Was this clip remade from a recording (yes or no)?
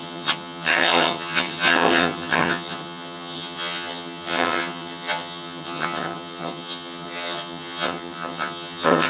yes